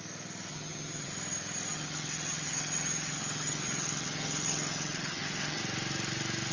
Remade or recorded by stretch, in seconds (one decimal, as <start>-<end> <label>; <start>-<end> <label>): 0.0-0.5 recorded; 0.5-1.1 remade; 1.1-1.7 recorded; 1.7-5.6 remade; 5.6-6.5 recorded